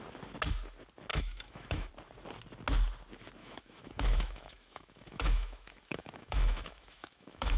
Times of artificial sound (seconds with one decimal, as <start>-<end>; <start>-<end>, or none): 1.1-1.9; 3.4-7.6